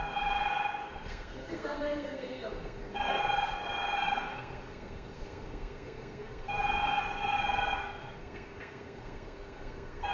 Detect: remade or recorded remade